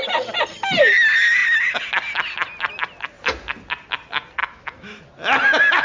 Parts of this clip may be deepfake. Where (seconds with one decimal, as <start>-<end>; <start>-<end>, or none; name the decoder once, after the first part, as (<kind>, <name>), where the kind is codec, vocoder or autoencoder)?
4.4-5.0 (autoencoder, DAC-VAE)